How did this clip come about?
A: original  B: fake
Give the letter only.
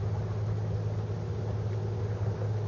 A